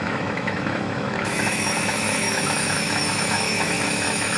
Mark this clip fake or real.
fake